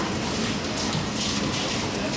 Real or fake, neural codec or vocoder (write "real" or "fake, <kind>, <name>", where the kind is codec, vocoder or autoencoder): real